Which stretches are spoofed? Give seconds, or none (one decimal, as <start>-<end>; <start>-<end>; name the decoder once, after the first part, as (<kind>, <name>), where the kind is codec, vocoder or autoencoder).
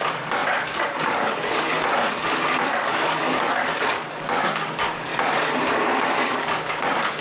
0.0-5.1 (codec, DAC); 5.7-7.2